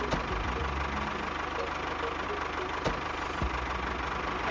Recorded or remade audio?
recorded